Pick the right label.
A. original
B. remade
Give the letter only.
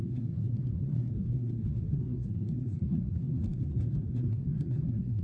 B